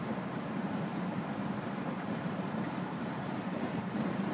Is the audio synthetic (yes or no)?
yes